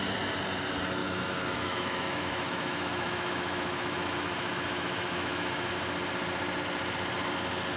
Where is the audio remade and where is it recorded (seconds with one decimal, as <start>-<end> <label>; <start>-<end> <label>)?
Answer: 0.0-1.0 recorded; 1.0-5.7 remade; 5.7-7.8 recorded